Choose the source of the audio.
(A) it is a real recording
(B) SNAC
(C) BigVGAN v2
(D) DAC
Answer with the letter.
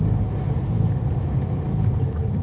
A